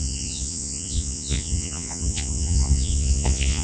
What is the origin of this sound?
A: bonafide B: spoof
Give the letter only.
B